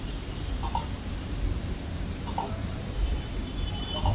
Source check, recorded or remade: remade